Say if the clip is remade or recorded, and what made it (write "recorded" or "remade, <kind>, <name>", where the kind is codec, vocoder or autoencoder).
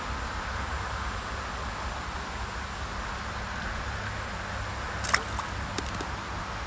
recorded